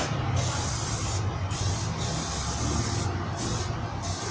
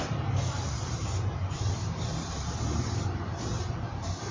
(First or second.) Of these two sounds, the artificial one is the second